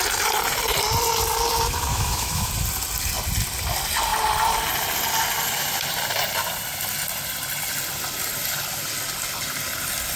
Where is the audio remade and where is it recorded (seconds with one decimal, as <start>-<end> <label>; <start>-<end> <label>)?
0.0-1.9 recorded; 1.9-2.5 remade; 2.5-10.2 recorded